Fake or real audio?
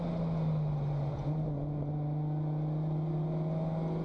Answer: real